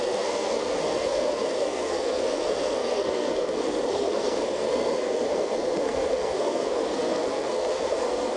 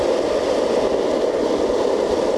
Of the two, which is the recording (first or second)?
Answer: second